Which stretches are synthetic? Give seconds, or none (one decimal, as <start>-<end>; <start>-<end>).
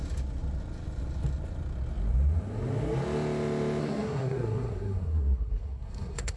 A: 3.8-6.4